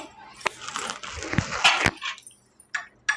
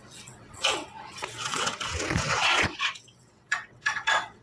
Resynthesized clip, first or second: second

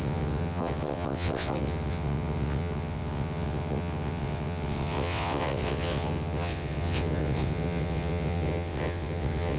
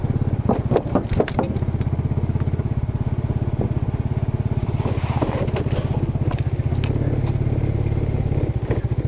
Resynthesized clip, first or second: first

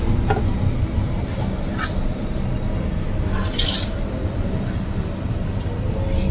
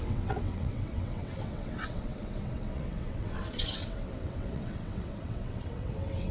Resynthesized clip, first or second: second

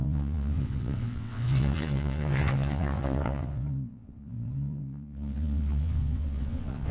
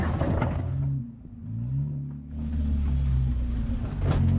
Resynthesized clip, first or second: first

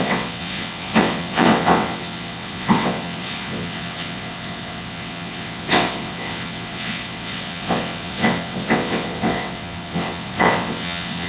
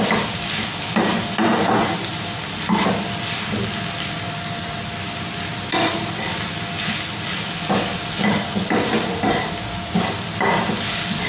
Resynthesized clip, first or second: first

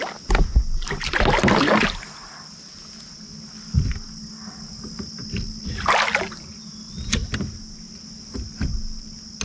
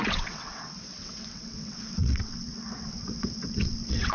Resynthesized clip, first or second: second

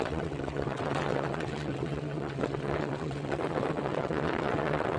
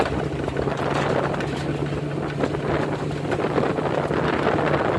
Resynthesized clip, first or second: first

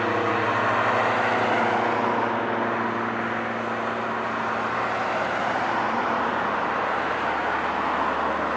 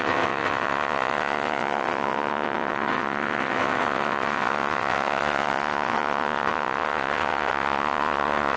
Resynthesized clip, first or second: second